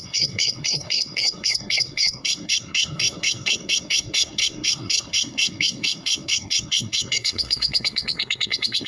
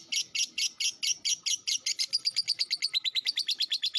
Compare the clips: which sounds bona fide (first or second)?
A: second